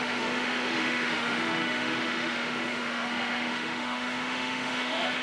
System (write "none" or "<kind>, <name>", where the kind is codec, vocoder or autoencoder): autoencoder, DAC-VAE